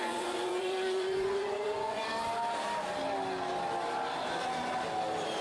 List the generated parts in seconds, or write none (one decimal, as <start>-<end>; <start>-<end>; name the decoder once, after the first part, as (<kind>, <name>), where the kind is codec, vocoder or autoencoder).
0.0-2.0 (vocoder, Vocos)